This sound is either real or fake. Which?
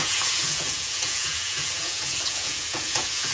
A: fake